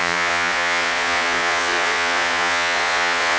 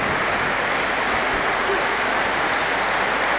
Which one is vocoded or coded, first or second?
first